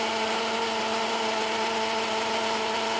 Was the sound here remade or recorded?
recorded